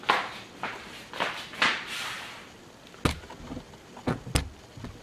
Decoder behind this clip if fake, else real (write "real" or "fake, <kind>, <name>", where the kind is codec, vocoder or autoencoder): real